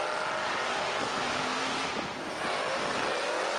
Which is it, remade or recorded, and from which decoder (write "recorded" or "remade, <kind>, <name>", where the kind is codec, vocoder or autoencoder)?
recorded